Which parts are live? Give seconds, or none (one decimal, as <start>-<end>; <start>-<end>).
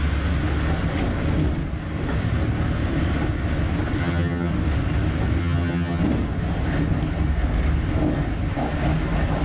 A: 0.0-4.0; 4.5-5.4; 6.0-9.4